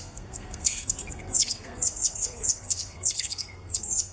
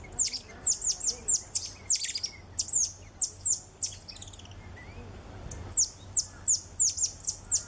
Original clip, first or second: second